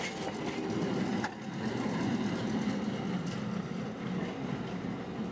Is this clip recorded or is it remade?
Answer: recorded